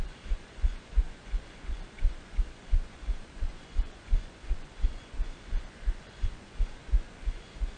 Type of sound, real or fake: fake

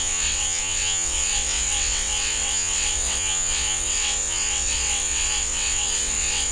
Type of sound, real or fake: fake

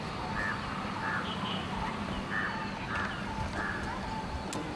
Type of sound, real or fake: real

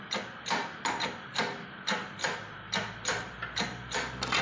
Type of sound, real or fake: real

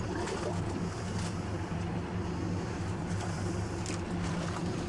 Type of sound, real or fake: fake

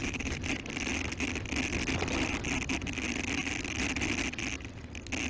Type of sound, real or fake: real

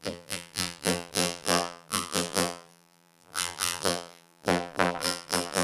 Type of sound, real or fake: fake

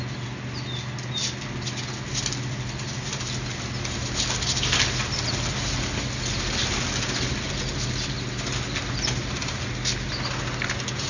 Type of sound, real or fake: real